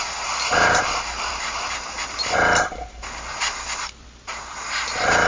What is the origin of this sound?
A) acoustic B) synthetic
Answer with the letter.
B